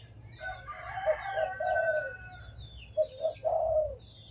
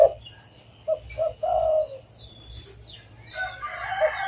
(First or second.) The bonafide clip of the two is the second